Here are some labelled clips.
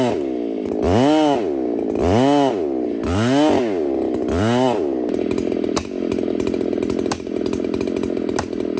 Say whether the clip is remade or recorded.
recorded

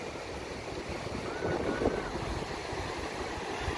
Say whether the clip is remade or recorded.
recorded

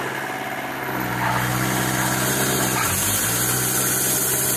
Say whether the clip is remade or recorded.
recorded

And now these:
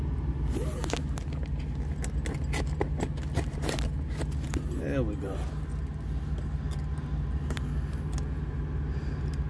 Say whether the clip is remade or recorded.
recorded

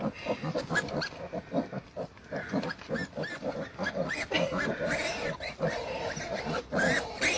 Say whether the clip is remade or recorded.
recorded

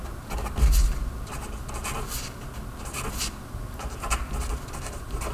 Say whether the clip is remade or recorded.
recorded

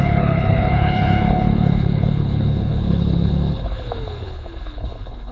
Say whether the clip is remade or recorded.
remade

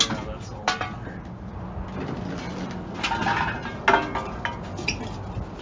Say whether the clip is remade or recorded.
recorded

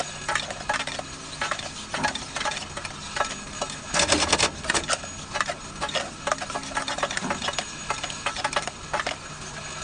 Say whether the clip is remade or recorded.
recorded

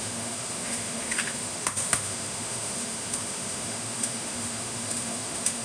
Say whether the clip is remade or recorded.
remade